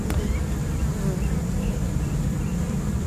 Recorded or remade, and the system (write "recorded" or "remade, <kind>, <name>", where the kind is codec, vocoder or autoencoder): recorded